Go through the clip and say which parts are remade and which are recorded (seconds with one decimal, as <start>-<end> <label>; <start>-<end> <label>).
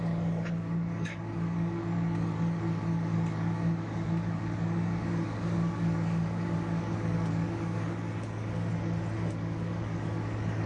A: 0.0-8.7 remade; 8.7-9.3 recorded; 9.3-10.7 remade